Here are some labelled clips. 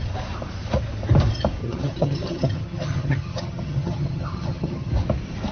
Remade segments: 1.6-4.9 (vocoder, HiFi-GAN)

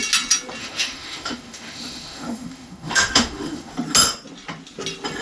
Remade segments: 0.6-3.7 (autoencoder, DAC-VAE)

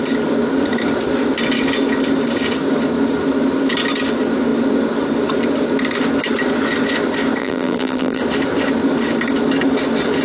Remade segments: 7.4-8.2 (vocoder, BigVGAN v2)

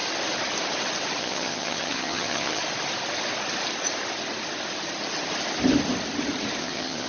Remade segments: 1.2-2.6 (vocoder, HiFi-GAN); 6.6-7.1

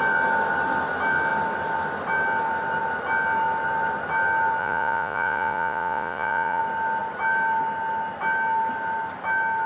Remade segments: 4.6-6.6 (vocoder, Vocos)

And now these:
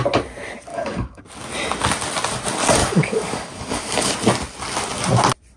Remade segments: 0.7-1.2 (codec, DAC); 2.8-4.1

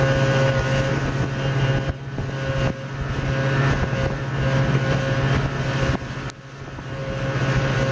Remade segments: none

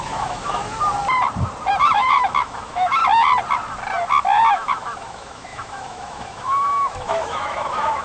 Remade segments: 0.0-0.6 (autoencoder, DAC-VAE); 1.8-3.0; 4.5-8.0